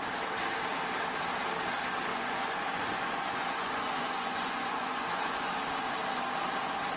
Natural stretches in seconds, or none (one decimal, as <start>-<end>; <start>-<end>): 0.0-2.1; 5.5-7.0